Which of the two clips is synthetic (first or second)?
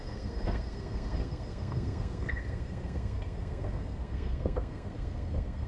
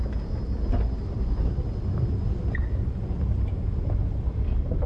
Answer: first